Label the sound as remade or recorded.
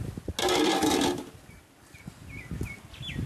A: recorded